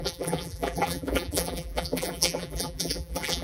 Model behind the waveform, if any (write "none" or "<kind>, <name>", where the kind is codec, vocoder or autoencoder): vocoder, BigVGAN v2